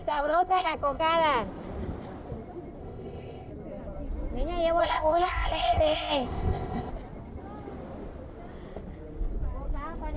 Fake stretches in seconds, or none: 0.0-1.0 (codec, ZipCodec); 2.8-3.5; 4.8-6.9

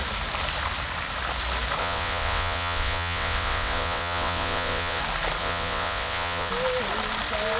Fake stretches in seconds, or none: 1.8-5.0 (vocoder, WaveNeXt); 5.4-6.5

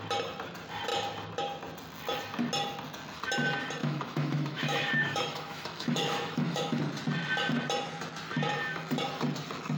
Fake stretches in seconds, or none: 3.8-6.8 (autoencoder, DAC-VAE)